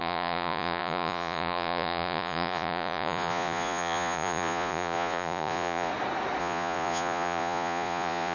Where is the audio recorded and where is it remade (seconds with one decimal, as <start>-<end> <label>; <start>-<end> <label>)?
0.0-5.9 remade; 5.9-6.4 recorded; 6.4-8.3 remade